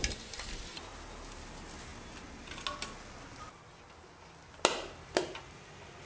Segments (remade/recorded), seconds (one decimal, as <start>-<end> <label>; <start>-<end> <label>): 0.0-6.1 recorded